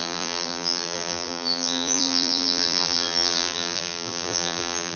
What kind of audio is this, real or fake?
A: fake